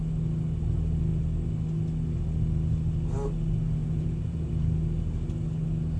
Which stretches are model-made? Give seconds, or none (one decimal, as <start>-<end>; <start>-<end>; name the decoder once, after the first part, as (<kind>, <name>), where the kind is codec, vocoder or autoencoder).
3.8-4.5 (vocoder, Vocos)